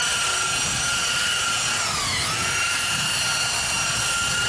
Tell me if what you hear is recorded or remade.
recorded